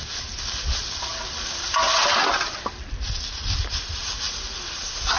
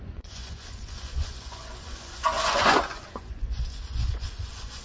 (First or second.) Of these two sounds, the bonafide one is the first